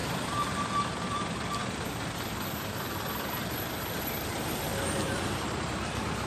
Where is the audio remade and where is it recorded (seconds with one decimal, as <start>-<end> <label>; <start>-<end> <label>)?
0.0-4.7 remade; 4.7-5.3 recorded; 5.3-6.3 remade

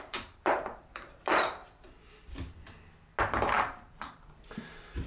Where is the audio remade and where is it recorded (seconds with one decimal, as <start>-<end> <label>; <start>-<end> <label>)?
0.0-1.6 remade; 1.6-3.5 recorded; 3.5-5.1 remade

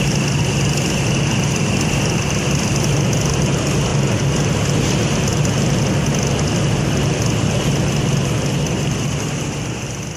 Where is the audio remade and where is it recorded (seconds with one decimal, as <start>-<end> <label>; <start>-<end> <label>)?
0.0-10.2 recorded

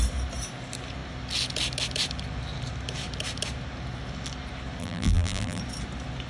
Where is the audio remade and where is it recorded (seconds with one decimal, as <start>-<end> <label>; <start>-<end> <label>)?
0.0-4.8 recorded; 4.8-5.6 remade; 5.6-6.3 recorded

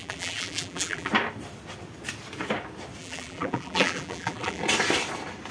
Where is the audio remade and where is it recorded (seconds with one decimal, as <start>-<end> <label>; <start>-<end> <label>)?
0.0-1.1 remade; 1.1-3.0 recorded; 3.0-4.6 remade; 4.6-5.5 recorded